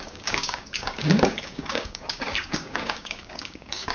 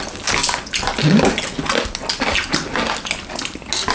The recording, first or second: second